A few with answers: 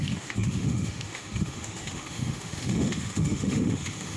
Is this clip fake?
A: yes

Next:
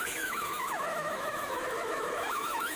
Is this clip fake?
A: yes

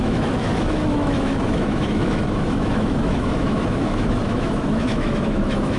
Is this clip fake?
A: yes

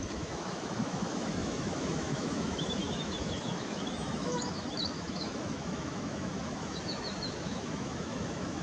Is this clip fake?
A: yes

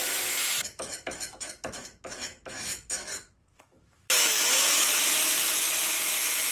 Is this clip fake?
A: yes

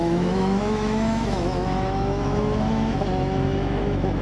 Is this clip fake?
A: yes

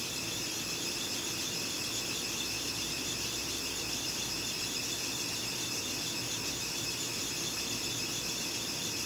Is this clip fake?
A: no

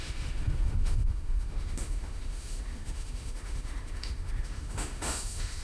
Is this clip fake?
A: yes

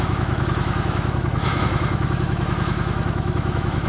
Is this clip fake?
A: yes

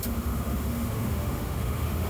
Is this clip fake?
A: yes